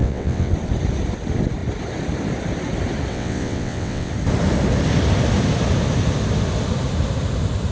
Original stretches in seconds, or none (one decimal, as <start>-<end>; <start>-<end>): 0.5-3.1; 4.1-7.7

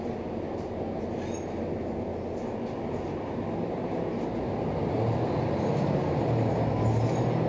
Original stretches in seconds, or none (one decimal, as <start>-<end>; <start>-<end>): 0.0-7.5

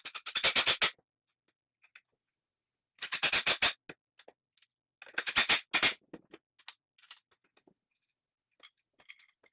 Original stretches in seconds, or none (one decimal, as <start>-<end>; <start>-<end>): 0.0-9.5

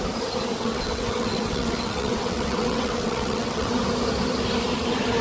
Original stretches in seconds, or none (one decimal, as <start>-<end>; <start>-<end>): 0.0-0.6; 3.7-5.2